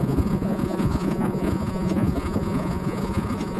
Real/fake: fake